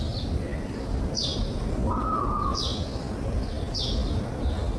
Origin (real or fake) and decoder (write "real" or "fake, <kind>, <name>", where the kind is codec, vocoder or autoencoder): real